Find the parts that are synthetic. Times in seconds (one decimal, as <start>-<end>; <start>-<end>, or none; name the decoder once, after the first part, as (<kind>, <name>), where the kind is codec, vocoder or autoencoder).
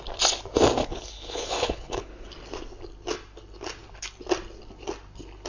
0.8-2.3 (codec, HILCodec)